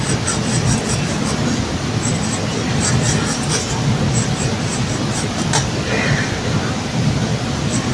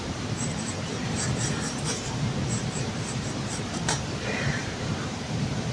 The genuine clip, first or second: first